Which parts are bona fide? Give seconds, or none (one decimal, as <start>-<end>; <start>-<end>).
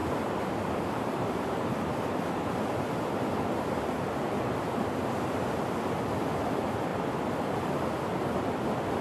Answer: 2.1-9.0